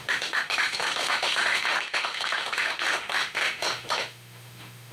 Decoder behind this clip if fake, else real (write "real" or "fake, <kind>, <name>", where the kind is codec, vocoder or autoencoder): fake, autoencoder, DAC-VAE